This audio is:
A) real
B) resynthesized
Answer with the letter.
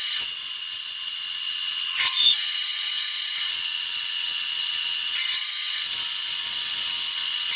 B